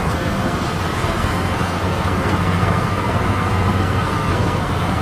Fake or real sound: fake